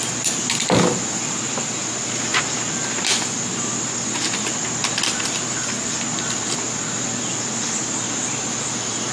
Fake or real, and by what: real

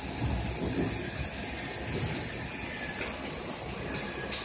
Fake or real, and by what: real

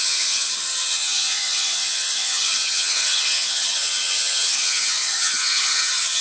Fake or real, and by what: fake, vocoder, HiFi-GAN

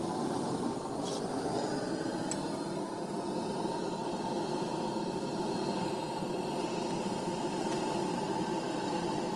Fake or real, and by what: real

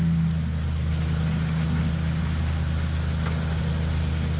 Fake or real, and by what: real